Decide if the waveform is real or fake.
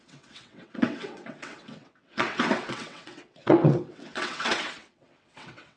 fake